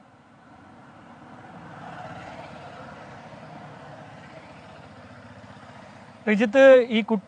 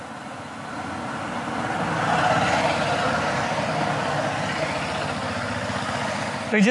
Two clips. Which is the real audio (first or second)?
second